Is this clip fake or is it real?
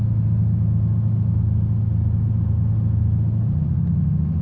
real